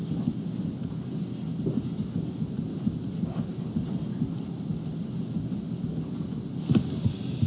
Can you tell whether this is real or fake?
real